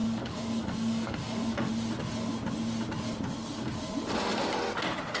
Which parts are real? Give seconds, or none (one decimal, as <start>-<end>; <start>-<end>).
1.7-5.2